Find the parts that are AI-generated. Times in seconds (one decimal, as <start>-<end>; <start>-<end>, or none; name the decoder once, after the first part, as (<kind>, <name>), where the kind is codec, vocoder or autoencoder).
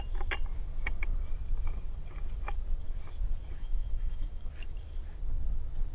3.6-4.5 (autoencoder, DAC-VAE)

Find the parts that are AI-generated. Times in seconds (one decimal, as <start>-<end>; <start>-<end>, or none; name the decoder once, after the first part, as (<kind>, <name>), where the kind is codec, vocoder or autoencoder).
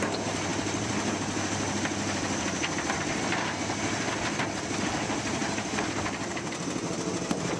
none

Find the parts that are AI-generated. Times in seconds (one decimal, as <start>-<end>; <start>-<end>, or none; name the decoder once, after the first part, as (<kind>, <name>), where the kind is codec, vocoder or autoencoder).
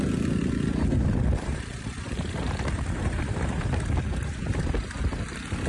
1.3-4.7 (vocoder, BigVGAN v2)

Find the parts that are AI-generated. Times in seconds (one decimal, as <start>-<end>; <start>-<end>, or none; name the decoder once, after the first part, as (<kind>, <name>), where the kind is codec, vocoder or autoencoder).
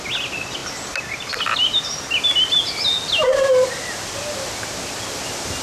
none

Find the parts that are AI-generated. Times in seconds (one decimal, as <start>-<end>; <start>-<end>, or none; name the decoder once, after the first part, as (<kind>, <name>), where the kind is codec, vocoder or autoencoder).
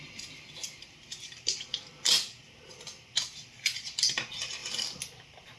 none